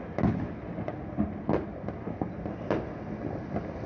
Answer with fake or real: real